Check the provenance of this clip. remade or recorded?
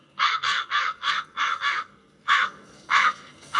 remade